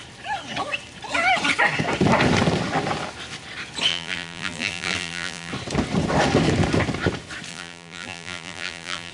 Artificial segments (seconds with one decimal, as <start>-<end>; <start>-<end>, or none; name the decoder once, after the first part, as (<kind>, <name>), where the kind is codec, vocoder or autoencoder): 3.9-5.5 (vocoder, BigVGAN v2); 7.5-9.1